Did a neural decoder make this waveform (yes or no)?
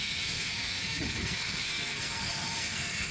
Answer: yes